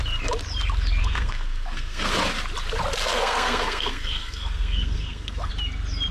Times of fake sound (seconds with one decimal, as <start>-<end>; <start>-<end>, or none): 1.0-2.1; 3.0-5.5